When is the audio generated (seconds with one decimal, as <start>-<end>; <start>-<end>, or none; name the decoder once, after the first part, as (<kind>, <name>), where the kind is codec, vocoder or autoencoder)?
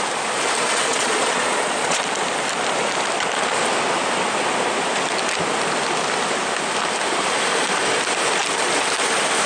0.9-2.0 (vocoder, Vocos)